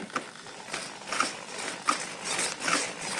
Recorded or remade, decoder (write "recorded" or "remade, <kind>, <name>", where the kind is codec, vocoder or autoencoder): recorded